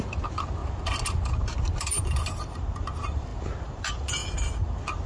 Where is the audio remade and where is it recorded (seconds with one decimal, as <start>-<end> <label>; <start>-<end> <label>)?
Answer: 0.0-0.6 remade; 0.6-1.3 recorded; 1.3-4.2 remade; 4.2-5.1 recorded